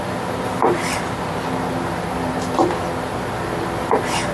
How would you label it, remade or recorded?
remade